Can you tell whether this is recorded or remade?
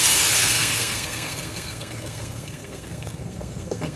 remade